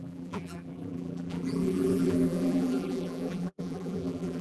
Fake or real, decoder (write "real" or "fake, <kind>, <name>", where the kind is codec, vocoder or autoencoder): fake, vocoder, BigVGAN v2